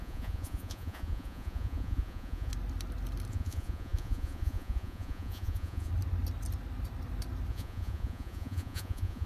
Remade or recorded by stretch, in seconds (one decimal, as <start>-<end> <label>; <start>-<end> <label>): 0.0-2.5 remade; 2.5-3.3 recorded; 3.3-5.9 remade; 5.9-7.5 recorded; 7.5-9.3 remade